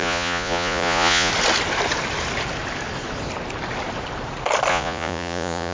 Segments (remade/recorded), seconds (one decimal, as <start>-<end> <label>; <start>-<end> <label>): 0.0-1.3 remade; 1.3-4.7 recorded; 4.7-5.7 remade